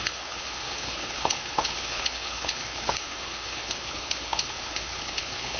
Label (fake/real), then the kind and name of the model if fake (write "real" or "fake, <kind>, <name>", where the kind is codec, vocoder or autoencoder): fake, codec, HILCodec